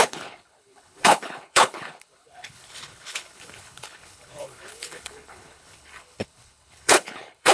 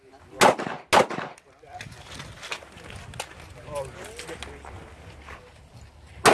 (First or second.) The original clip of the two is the second